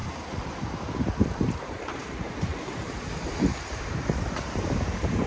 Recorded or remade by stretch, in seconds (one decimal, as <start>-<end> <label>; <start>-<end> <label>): 0.0-1.4 recorded; 1.4-2.5 remade; 2.5-3.4 recorded; 3.4-5.3 remade